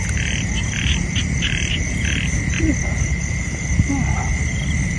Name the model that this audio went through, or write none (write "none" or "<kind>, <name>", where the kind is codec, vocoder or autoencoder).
none